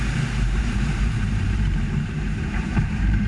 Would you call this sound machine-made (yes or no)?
yes